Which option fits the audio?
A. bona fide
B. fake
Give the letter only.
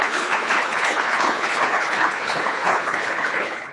B